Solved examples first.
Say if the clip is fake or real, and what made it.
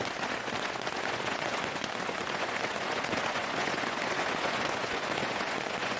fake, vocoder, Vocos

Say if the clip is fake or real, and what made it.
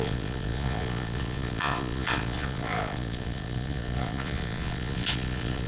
fake, vocoder, Vocos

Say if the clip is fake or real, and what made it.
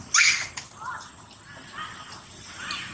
real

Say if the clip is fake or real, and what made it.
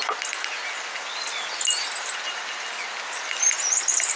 real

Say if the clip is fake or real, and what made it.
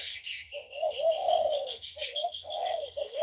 fake, codec, SNAC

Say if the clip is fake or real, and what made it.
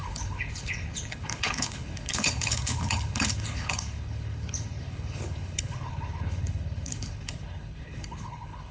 fake, codec, HILCodec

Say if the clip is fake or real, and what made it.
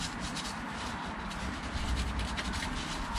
fake, vocoder, BigVGAN v2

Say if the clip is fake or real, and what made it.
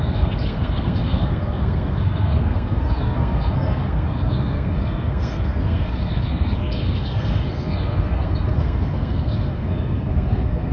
fake, codec, SNAC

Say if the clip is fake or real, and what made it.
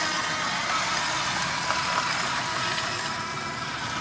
real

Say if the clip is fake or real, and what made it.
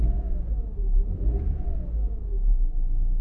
real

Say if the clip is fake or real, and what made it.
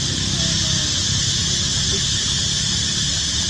real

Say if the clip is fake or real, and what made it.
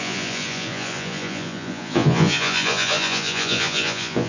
fake, vocoder, Vocos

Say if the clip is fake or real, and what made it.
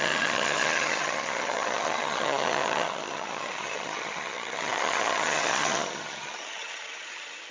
fake, vocoder, HiFi-GAN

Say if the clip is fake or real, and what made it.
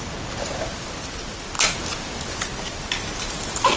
real